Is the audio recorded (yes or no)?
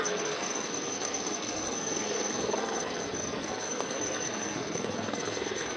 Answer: no